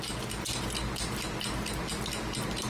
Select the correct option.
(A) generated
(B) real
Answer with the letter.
B